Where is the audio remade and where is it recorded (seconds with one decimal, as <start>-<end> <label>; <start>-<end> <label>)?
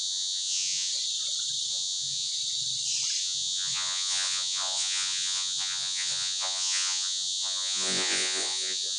0.0-0.9 remade; 0.9-1.7 recorded; 1.7-2.3 remade; 2.3-3.2 recorded; 3.2-9.0 remade